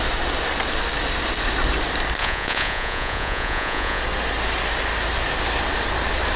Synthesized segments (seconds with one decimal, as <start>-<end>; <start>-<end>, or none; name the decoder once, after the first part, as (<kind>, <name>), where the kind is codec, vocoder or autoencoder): 2.2-4.0 (vocoder, Vocos)